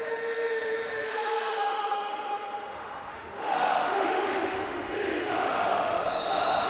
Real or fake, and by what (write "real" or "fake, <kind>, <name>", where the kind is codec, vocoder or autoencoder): fake, autoencoder, DAC-VAE